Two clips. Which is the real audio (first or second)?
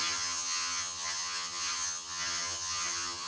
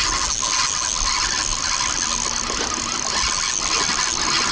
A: second